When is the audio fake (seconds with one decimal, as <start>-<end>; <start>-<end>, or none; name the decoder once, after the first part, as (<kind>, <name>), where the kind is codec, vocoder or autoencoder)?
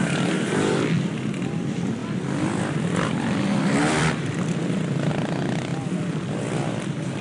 2.0-5.1 (vocoder, BigVGAN v2); 5.7-6.4